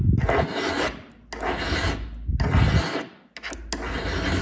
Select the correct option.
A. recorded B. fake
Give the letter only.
A